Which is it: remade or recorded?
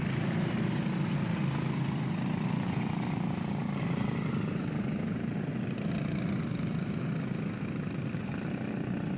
recorded